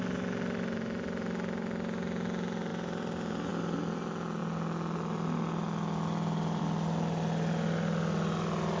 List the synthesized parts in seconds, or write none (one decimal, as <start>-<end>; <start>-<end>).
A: none